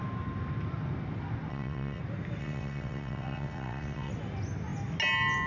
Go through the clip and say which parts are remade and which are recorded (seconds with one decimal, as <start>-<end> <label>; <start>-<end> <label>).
0.0-1.5 recorded; 1.5-2.0 remade; 2.0-2.4 recorded; 2.4-4.1 remade; 4.1-5.5 recorded